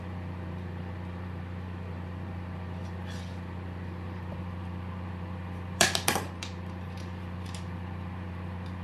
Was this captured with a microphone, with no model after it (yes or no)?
no